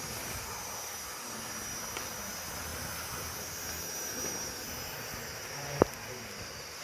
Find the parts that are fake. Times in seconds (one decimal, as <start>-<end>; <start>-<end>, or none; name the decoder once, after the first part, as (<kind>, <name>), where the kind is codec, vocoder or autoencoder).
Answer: none